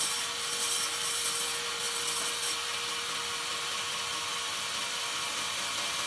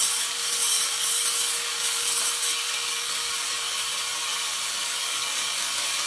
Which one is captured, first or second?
first